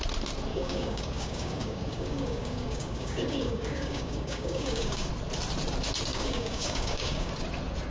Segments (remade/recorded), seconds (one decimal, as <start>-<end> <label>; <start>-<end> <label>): 0.0-0.5 recorded; 0.5-5.1 remade; 5.1-6.1 recorded; 6.1-7.3 remade; 7.3-7.9 recorded